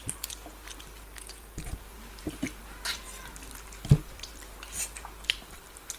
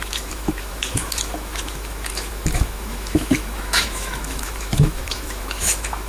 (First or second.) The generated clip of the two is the second